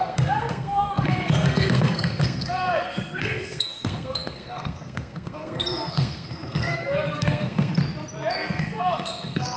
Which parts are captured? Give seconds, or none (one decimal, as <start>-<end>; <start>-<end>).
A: 7.7-8.3